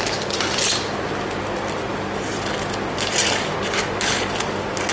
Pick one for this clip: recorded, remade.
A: recorded